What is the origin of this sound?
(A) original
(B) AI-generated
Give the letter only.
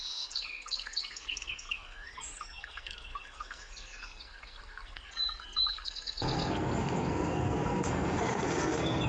B